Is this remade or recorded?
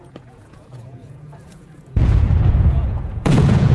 remade